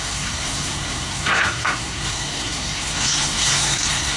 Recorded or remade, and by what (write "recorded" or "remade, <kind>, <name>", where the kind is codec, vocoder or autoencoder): remade, codec, SNAC